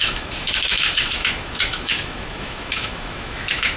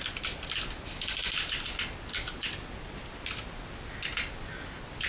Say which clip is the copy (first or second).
first